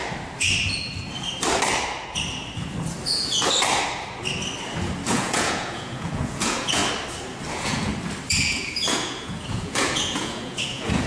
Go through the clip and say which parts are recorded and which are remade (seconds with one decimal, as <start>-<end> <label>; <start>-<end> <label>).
0.0-5.1 recorded; 5.1-6.8 remade; 6.8-7.5 recorded; 7.5-7.9 remade; 7.9-8.4 recorded; 8.4-11.1 remade